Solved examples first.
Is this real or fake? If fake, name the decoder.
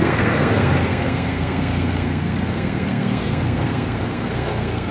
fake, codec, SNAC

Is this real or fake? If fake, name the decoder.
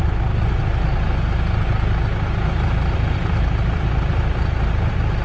real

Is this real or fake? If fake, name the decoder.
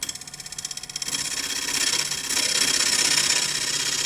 real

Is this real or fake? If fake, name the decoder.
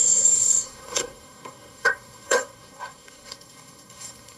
fake, codec, SNAC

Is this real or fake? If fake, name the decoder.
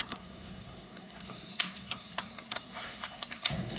fake, codec, SNAC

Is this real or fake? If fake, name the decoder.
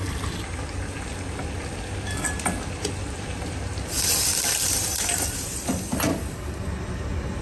real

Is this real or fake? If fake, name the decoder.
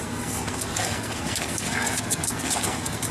fake, codec, SNAC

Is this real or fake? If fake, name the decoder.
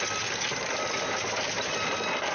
real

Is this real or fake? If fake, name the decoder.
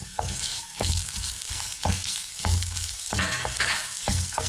fake, codec, SNAC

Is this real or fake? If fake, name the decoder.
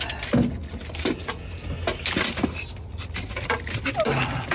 real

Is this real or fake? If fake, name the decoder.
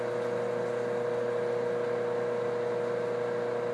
real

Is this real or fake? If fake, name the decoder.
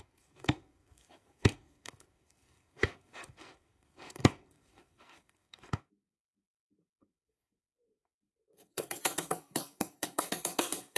fake, codec, SNAC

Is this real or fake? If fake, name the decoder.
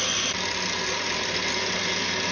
real